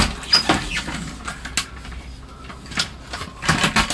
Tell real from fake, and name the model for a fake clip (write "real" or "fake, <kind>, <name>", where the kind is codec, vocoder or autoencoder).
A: real